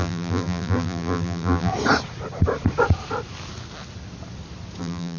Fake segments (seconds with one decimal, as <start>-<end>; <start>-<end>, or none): 0.0-1.7; 4.8-5.2

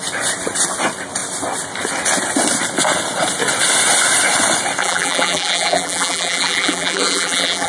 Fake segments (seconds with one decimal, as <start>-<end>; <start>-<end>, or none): 4.8-7.7

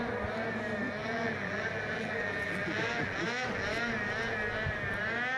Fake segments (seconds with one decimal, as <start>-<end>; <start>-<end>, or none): 1.0-3.2

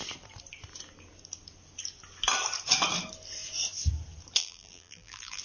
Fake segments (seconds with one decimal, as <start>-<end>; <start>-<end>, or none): 4.4-5.4

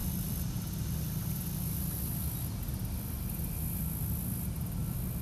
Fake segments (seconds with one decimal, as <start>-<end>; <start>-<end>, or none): 0.0-2.0

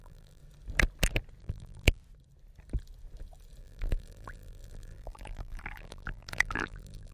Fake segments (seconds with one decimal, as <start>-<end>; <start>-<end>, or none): 0.0-0.4; 1.4-2.0; 3.6-7.1

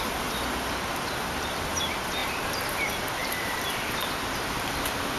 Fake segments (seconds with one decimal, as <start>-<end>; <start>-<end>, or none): 2.2-2.8; 3.2-3.7

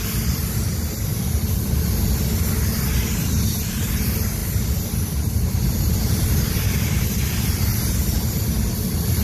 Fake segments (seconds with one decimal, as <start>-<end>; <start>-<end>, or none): 0.0-7.7; 8.3-9.2